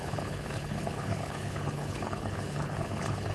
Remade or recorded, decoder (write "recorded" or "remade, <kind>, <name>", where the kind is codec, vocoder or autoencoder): remade, codec, HILCodec